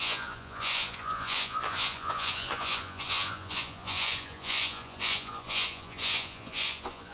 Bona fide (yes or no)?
no